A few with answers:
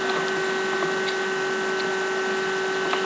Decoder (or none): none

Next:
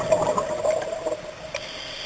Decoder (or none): none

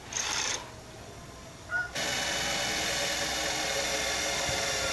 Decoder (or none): none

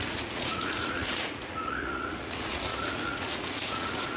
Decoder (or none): vocoder, Vocos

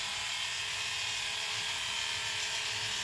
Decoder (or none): none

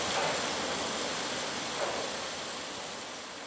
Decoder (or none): none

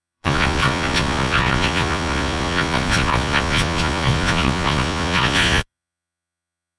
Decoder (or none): vocoder, Vocos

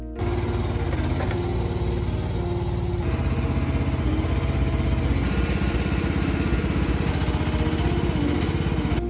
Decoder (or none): none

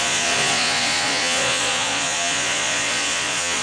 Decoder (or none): vocoder, Vocos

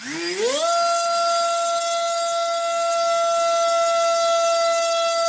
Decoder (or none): none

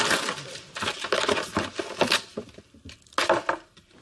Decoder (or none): none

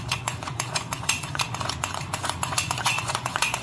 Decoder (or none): vocoder, Vocos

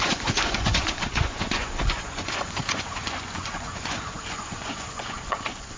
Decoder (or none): vocoder, Vocos